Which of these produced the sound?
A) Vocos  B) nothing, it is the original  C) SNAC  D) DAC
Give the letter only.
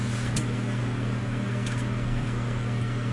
C